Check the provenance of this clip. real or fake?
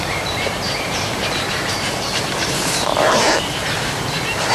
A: fake